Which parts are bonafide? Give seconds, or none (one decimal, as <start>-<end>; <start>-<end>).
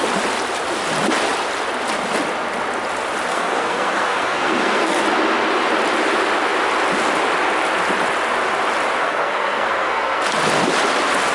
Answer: 0.0-3.3; 5.0-9.0; 10.2-11.3